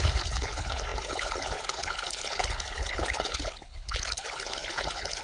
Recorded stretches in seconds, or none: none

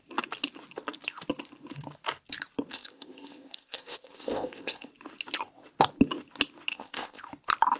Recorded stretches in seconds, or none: 0.0-2.7; 4.9-6.7; 7.2-7.8